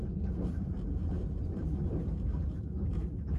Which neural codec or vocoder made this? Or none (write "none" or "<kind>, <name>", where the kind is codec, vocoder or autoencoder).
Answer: vocoder, BigVGAN v2